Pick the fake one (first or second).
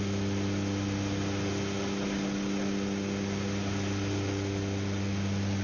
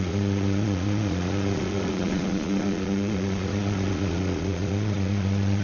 second